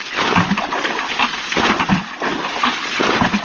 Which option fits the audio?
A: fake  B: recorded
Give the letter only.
B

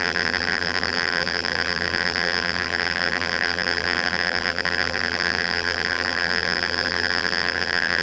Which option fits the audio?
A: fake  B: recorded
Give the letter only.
A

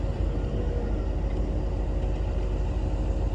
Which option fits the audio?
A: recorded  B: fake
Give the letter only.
A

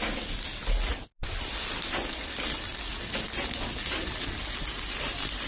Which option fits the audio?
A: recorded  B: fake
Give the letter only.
A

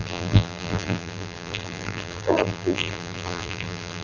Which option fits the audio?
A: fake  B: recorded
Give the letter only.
A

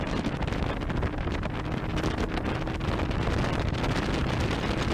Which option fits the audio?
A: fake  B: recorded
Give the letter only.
B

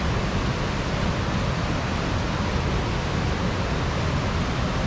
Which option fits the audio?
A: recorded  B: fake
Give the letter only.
A